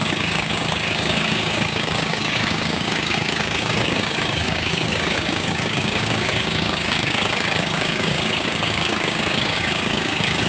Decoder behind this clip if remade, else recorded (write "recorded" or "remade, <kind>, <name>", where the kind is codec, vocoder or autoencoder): remade, codec, DAC